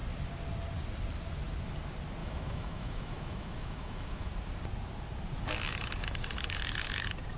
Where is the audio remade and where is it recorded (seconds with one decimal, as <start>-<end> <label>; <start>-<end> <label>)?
0.0-2.2 recorded; 2.2-4.3 remade; 4.3-7.4 recorded